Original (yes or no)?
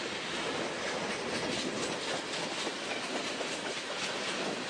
yes